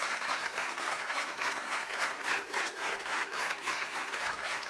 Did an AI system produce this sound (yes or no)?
yes